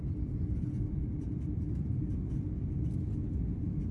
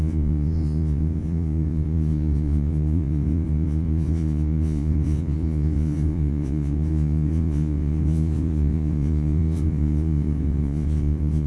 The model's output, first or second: second